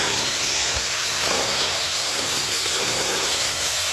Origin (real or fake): fake